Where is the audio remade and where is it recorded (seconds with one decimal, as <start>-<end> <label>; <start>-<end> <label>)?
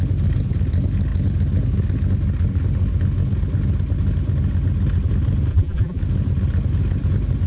0.0-5.5 recorded; 5.5-6.0 remade; 6.0-7.5 recorded